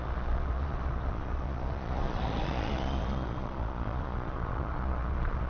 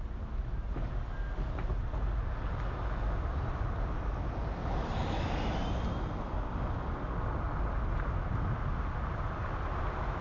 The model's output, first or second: first